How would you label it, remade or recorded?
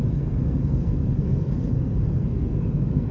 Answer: remade